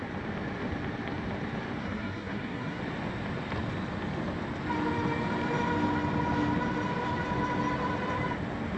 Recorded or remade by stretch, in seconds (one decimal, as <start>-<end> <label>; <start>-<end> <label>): 0.0-1.8 recorded; 1.8-2.8 remade; 2.8-8.8 recorded